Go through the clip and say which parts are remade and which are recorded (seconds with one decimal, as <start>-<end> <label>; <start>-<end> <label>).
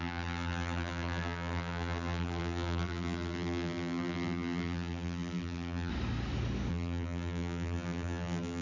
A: 0.0-5.9 remade; 5.9-6.7 recorded; 6.7-8.6 remade